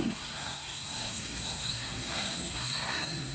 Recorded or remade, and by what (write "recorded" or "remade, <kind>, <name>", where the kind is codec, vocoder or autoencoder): remade, codec, SNAC